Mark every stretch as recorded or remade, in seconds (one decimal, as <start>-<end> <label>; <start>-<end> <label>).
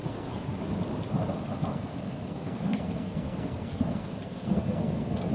0.0-0.6 remade; 0.6-1.7 recorded; 1.7-5.3 remade